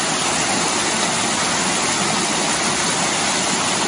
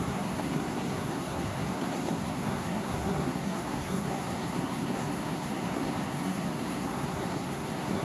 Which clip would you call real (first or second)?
first